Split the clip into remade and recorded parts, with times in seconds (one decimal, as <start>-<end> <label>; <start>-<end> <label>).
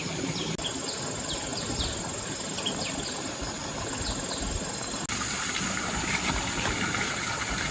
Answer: 0.0-7.7 recorded